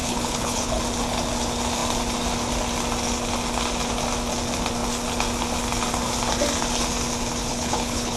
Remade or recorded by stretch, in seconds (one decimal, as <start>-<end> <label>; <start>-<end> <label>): 0.0-0.8 remade; 0.8-7.4 recorded; 7.4-8.2 remade